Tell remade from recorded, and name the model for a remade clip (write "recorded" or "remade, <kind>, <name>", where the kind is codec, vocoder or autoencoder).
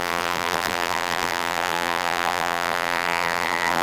remade, vocoder, BigVGAN v2